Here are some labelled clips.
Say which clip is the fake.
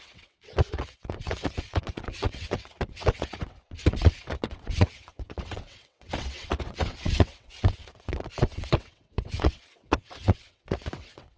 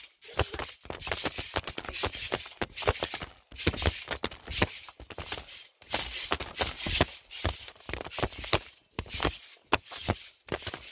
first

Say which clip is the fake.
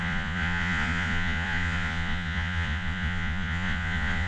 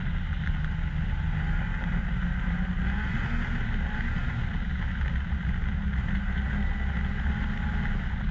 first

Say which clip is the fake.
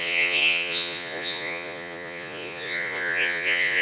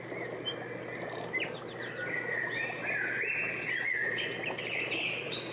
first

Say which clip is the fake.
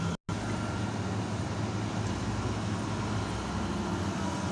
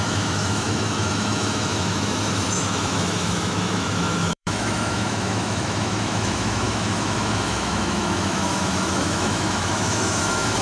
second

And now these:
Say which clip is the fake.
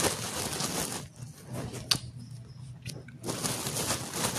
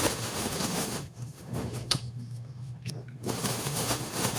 second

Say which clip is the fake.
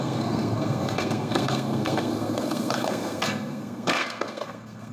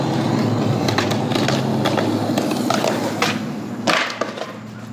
first